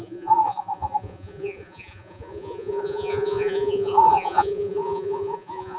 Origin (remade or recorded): remade